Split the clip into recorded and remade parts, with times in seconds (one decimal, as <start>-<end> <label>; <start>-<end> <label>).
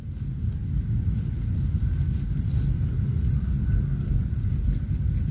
0.0-5.3 recorded